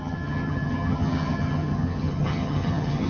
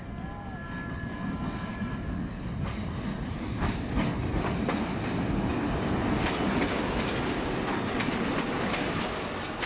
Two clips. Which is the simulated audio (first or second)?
first